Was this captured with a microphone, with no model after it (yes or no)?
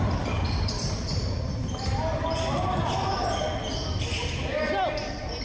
yes